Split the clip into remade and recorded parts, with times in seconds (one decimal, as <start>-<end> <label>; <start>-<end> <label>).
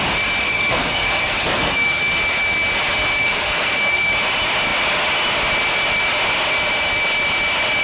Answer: 0.0-0.4 recorded; 0.4-2.0 remade; 2.0-3.2 recorded; 3.2-4.1 remade; 4.1-7.8 recorded